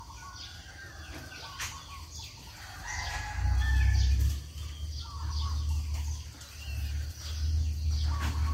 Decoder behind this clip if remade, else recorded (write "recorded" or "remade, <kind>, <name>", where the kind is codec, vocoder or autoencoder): recorded